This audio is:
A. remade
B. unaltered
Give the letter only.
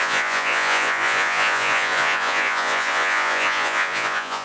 A